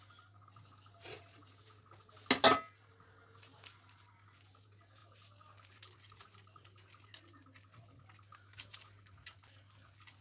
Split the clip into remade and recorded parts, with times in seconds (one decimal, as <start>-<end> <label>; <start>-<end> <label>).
0.0-10.2 recorded